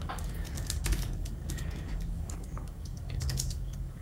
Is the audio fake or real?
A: fake